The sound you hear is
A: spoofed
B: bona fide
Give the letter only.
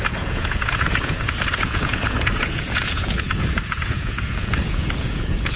A